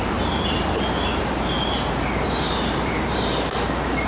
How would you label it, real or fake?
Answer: fake